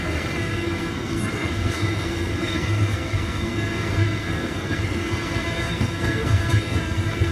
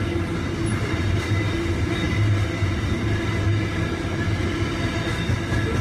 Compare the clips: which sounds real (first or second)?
second